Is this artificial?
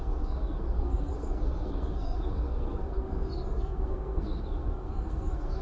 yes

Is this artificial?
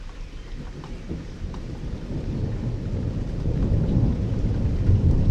no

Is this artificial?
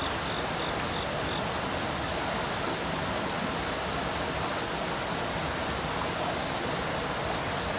no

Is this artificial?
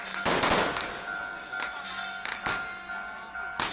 no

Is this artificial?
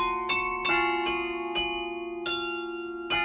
no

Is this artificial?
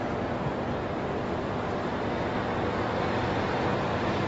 no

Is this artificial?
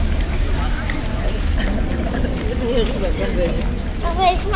no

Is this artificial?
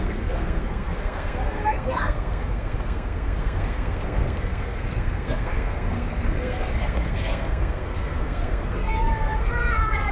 yes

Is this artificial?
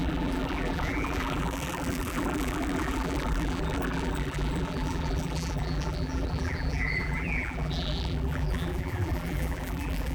yes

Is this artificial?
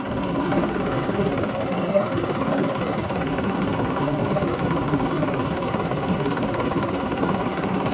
yes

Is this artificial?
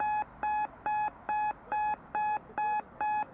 no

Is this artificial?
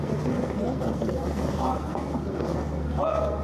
yes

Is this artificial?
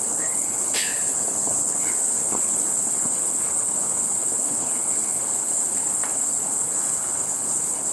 yes